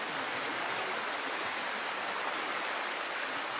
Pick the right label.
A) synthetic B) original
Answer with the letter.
B